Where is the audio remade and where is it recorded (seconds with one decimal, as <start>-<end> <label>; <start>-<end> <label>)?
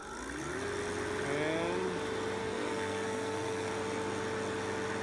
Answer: 0.0-2.4 recorded; 2.4-3.7 remade; 3.7-5.0 recorded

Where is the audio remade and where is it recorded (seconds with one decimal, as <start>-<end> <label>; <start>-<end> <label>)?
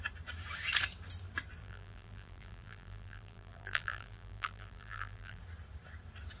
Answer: 0.0-1.6 recorded; 1.6-5.4 remade; 5.4-6.4 recorded